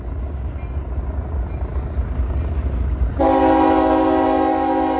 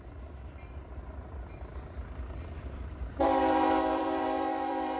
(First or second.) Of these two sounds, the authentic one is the first